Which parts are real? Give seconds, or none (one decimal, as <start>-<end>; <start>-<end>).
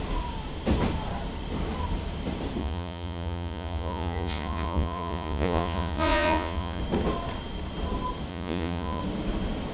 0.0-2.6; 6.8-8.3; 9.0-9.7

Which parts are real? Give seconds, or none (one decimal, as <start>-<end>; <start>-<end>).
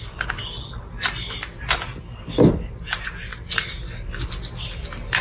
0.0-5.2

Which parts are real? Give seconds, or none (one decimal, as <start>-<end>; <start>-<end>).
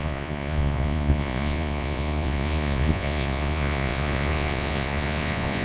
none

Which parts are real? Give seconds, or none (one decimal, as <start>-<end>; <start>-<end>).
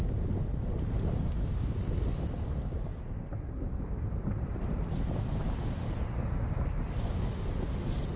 0.0-8.2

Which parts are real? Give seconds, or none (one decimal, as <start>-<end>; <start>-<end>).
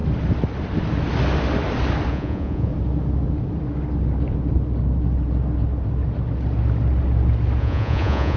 0.0-2.1; 2.7-7.6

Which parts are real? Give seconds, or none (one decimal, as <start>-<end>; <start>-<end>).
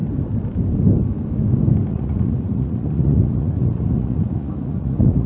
0.0-1.9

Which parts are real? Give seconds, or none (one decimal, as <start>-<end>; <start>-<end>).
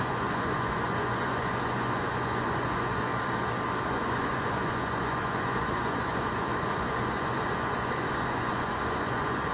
3.1-3.9